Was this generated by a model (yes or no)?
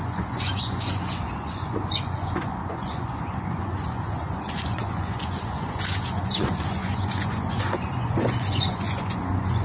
yes